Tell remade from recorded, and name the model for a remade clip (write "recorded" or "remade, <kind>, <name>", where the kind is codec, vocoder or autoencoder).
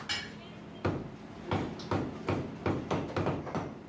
recorded